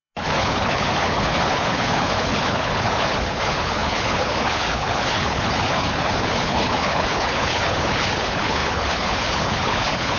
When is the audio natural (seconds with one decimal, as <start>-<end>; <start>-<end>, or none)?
none

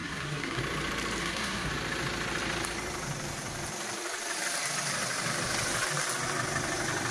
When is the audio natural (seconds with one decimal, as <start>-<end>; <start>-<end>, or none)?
0.6-1.2; 1.7-7.1

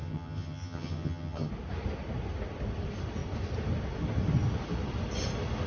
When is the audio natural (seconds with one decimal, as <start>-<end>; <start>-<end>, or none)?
1.5-5.7